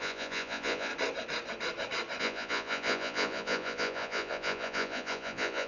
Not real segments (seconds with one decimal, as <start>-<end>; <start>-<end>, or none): 0.0-0.9; 2.2-5.7